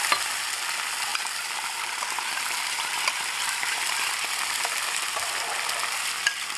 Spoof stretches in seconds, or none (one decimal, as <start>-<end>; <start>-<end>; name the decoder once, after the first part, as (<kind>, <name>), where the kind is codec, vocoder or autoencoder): 0.0-6.6 (vocoder, BigVGAN v2)